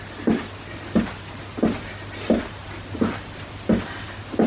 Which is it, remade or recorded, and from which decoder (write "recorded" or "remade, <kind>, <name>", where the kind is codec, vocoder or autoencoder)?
recorded